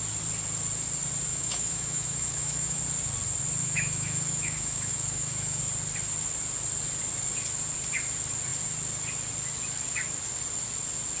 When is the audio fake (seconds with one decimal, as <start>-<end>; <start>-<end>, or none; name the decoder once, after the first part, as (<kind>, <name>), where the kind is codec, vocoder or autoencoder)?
1.3-2.8 (autoencoder, DAC-VAE); 3.6-5.6

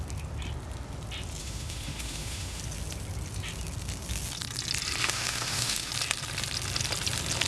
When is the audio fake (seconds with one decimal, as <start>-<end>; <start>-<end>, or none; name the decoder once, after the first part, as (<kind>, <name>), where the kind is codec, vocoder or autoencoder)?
1.4-2.6 (autoencoder, DAC-VAE); 5.0-5.9

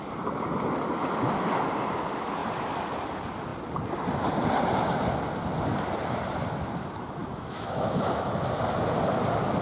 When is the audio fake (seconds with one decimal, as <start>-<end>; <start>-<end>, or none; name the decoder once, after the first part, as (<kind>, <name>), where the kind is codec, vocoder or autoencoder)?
7.2-8.3 (autoencoder, DAC-VAE)

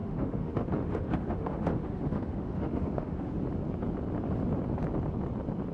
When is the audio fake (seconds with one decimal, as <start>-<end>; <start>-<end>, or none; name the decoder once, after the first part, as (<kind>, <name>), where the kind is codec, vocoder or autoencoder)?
0.0-3.4 (autoencoder, DAC-VAE)

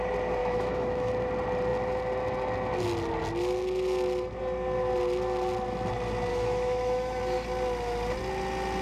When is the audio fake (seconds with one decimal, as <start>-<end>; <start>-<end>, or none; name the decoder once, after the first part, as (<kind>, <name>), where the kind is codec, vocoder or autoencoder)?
0.4-1.1 (autoencoder, DAC-VAE); 6.3-7.2

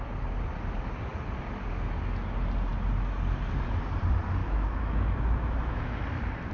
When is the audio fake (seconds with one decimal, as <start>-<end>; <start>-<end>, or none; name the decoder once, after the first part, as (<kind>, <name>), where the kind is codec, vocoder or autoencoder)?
4.4-6.0 (autoencoder, DAC-VAE)

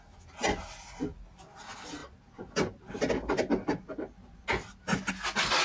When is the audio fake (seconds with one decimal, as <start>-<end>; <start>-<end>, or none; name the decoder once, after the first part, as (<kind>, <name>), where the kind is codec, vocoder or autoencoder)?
none